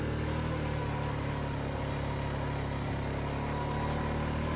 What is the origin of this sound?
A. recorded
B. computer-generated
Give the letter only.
A